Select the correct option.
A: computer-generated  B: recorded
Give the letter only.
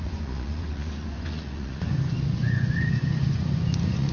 A